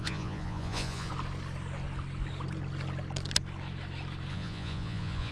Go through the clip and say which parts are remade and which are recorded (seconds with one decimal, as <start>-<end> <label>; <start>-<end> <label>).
0.0-1.1 remade; 1.1-4.3 recorded; 4.3-5.3 remade